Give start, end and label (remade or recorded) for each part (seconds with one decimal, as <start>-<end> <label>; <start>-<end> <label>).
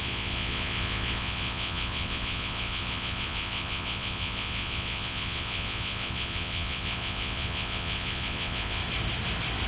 0.0-8.8 remade; 8.8-9.7 recorded